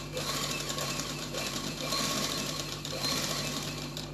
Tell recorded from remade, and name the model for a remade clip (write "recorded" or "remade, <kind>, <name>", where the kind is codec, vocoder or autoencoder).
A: remade, vocoder, BigVGAN v2